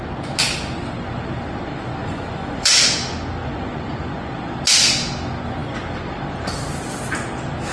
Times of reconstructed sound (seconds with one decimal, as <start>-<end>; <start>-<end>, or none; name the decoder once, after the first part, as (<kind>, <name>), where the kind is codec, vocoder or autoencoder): 2.0-2.7 (vocoder, Vocos); 3.4-4.3